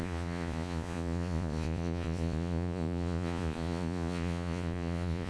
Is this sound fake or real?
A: fake